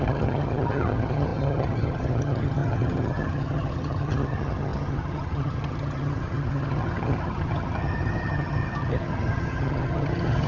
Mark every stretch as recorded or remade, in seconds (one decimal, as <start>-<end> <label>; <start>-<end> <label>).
0.0-10.5 remade